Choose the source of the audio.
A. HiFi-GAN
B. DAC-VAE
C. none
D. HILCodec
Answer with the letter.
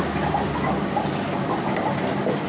C